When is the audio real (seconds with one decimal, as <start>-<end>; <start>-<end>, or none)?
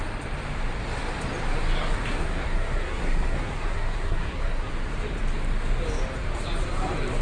0.0-2.1; 4.7-7.2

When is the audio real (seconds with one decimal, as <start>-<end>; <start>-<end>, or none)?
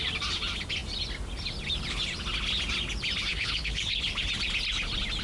0.0-3.3; 4.0-5.2